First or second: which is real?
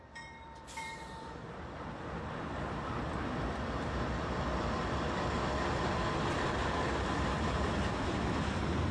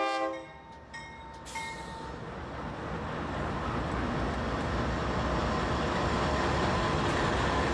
second